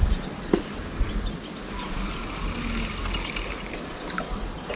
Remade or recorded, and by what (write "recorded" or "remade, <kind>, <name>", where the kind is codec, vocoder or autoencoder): recorded